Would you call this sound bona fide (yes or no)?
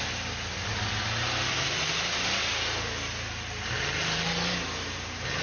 yes